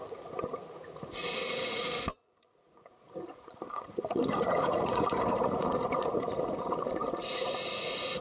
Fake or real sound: fake